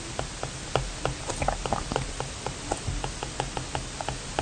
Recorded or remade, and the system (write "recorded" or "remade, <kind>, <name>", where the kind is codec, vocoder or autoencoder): recorded